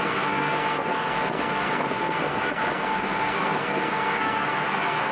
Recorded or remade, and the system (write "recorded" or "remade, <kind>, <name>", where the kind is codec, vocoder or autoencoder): remade, codec, SNAC